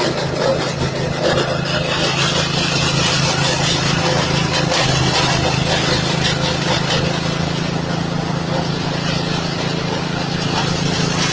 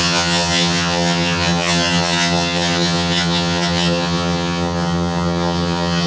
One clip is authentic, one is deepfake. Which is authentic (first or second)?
first